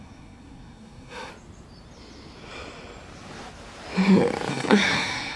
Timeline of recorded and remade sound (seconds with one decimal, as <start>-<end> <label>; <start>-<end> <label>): 0.0-1.3 remade; 1.3-4.5 recorded; 4.5-5.4 remade